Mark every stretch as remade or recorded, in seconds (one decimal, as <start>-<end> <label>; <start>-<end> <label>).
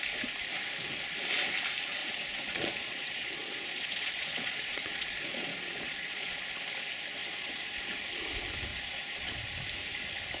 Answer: 0.0-2.0 recorded; 2.0-6.4 remade; 6.4-7.2 recorded; 7.2-7.9 remade; 7.9-8.7 recorded; 8.7-9.4 remade; 9.4-10.4 recorded